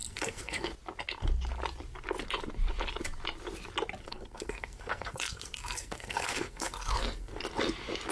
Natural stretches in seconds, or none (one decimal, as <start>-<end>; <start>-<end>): 0.7-4.0; 7.4-8.1